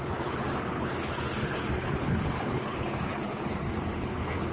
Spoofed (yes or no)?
yes